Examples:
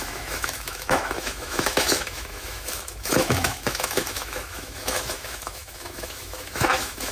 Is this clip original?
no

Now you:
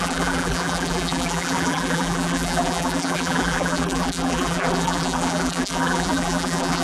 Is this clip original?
no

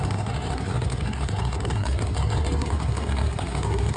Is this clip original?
no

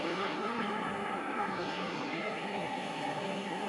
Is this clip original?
no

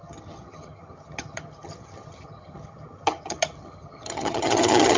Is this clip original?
no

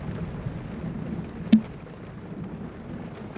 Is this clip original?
yes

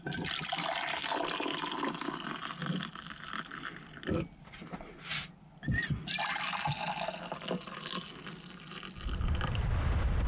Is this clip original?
yes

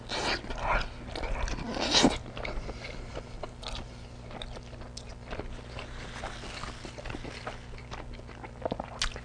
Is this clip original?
yes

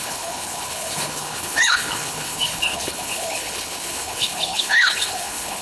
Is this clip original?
no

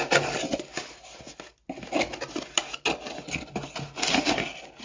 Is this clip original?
yes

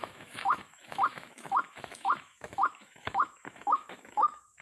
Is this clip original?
no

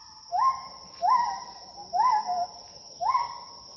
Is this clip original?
yes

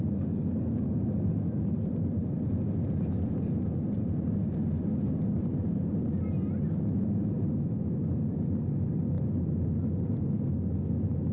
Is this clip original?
yes